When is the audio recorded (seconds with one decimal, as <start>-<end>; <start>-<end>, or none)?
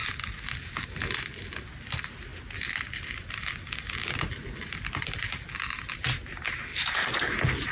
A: 0.0-7.7